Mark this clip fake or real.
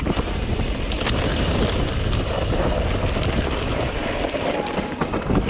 real